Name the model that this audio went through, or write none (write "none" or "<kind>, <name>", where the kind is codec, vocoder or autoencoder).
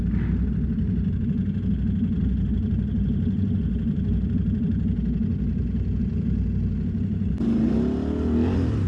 none